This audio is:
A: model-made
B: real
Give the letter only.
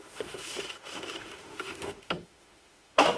A